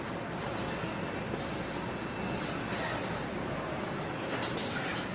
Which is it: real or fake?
real